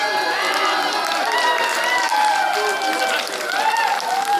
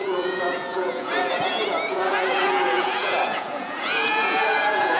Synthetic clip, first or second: second